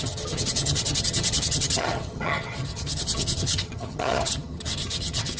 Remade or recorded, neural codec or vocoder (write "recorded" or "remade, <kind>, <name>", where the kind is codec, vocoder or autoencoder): remade, vocoder, HiFi-GAN